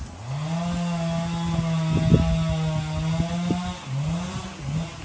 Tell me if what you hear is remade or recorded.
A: recorded